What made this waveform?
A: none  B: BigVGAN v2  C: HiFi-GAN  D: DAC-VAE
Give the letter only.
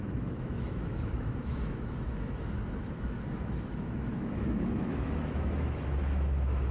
D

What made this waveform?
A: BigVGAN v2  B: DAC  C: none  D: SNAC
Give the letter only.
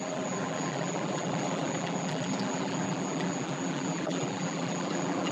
A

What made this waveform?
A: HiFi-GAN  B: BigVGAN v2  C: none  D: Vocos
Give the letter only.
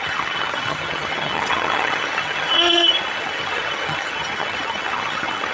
A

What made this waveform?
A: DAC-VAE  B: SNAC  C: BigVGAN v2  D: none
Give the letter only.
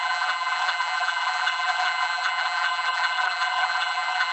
C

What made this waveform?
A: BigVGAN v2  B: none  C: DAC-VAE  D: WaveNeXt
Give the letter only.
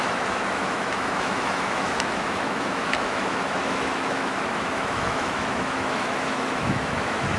C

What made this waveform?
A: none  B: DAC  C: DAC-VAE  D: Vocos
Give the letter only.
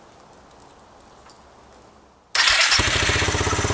A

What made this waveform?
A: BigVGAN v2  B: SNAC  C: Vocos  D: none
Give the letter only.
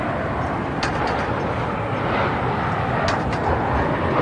D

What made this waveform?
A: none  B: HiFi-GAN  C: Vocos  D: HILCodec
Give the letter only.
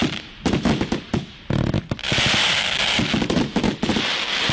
A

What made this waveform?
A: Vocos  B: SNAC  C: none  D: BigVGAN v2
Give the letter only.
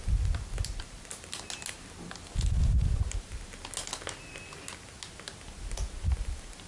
C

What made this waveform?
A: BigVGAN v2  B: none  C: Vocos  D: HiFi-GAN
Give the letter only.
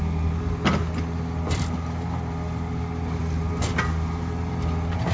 B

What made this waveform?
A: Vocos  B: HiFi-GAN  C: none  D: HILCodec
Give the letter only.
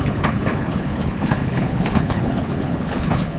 D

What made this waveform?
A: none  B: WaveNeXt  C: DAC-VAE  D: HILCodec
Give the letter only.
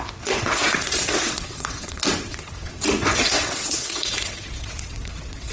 B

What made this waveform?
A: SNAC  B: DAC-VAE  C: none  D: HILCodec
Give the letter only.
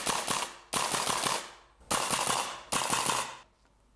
C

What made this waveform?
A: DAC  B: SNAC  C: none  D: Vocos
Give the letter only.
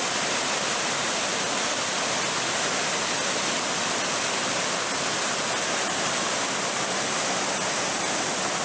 C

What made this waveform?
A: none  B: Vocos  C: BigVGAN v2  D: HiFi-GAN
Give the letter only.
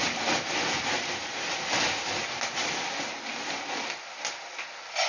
A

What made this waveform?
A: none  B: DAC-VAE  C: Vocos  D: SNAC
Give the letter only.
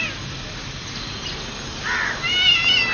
A